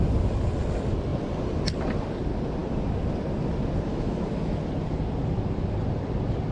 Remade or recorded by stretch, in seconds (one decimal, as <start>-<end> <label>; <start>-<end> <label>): 0.0-3.9 recorded; 3.9-4.6 remade; 4.6-6.5 recorded